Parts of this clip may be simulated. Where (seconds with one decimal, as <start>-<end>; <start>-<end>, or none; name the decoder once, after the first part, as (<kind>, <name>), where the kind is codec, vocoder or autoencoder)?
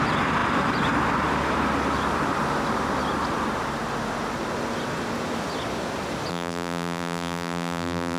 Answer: 6.3-8.2 (vocoder, BigVGAN v2)